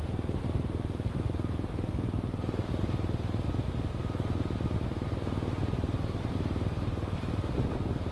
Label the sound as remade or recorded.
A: recorded